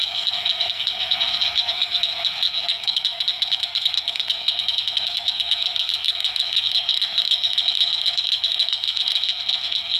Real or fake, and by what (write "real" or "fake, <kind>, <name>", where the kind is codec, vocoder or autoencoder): fake, codec, SNAC